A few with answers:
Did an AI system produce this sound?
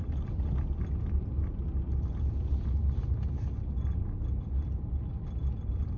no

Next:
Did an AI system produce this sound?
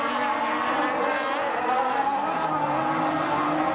no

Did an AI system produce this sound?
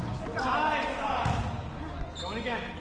no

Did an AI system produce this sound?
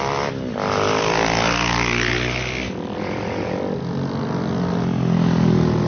no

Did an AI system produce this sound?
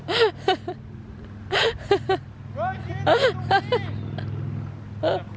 no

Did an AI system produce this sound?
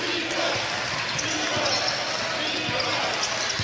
no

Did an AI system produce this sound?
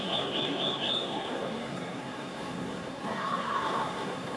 yes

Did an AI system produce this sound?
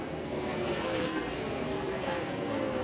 yes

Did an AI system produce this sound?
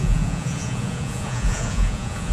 yes